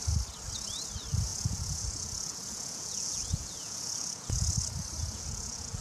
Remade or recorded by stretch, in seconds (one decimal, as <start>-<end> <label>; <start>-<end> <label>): 0.0-1.3 recorded; 1.3-4.5 remade; 4.5-5.0 recorded; 5.0-5.8 remade